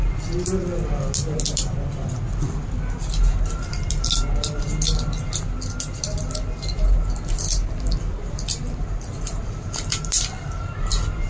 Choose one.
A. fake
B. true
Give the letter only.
B